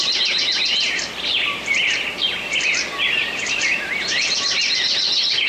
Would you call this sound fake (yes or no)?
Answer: no